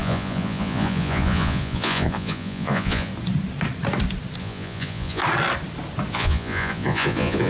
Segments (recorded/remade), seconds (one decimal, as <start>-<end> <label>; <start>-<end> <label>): 0.0-3.1 remade; 3.1-4.4 recorded; 4.4-5.2 remade; 5.2-6.1 recorded; 6.1-7.5 remade